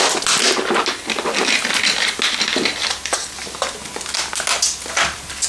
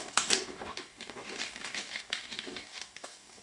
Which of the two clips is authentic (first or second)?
first